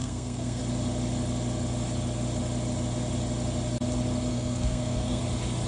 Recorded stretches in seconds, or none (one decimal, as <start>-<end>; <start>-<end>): 0.6-4.3; 5.2-5.7